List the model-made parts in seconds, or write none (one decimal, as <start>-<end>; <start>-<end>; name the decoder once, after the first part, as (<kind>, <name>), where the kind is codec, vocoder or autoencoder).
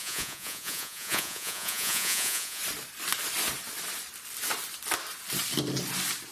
0.0-2.6 (vocoder, Vocos)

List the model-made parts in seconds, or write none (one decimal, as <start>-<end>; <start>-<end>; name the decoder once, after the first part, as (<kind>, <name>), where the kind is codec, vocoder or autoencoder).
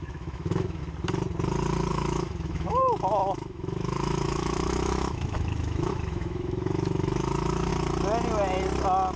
0.0-0.8 (autoencoder, DAC-VAE); 1.9-7.7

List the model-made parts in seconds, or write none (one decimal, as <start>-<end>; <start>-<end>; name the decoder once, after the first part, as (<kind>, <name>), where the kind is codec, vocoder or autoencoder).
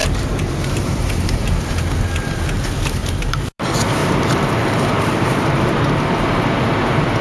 0.0-1.7 (vocoder, BigVGAN v2); 3.0-3.6; 4.0-5.8